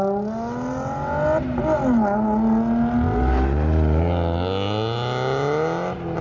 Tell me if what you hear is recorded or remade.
recorded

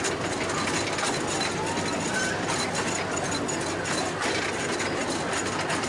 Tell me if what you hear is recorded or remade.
recorded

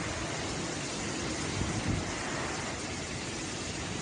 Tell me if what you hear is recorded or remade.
recorded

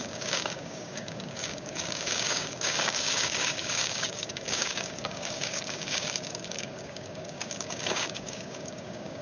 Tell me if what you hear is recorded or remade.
remade